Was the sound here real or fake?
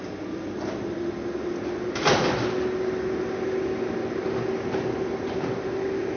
real